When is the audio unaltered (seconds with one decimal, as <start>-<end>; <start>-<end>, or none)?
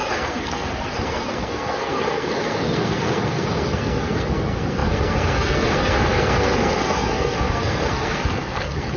none